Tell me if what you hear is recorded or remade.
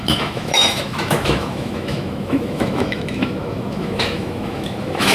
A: remade